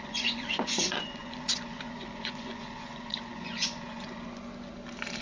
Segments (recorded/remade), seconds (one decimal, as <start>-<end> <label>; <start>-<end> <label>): 0.0-4.5 remade; 4.5-5.2 recorded